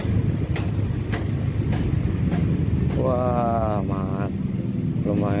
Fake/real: real